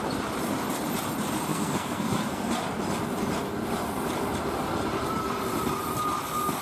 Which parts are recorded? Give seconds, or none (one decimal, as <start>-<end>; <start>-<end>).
0.0-1.5; 2.5-6.6